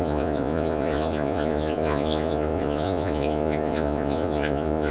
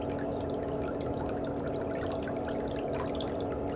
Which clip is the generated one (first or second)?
first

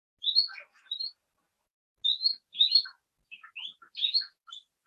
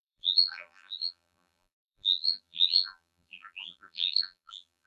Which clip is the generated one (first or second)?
second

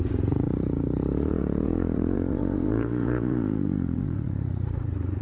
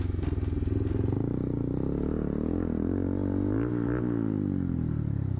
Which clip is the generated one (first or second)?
first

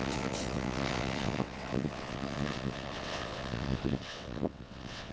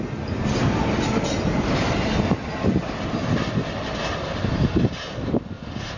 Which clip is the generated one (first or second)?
first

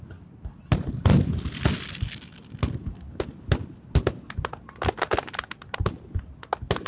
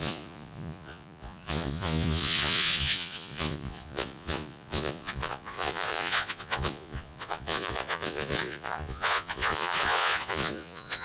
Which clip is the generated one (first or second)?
second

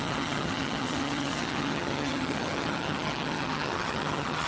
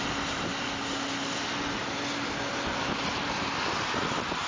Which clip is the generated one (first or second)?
first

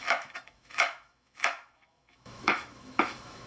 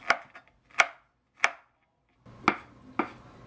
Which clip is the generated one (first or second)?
first